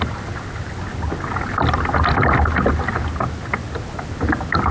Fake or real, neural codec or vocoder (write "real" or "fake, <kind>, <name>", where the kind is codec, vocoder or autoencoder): real